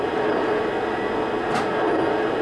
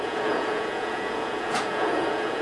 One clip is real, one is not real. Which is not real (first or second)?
second